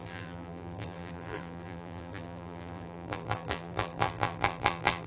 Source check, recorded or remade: remade